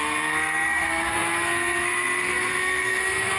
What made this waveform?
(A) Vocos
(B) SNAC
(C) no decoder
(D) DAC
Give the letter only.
B